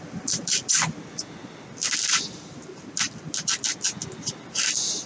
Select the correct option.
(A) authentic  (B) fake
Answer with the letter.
A